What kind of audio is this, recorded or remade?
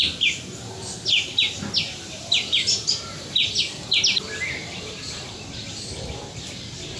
recorded